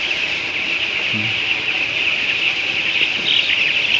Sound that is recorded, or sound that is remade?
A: remade